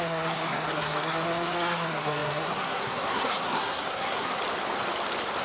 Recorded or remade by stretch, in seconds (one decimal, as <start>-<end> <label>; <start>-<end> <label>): 0.0-4.4 remade; 4.4-5.4 recorded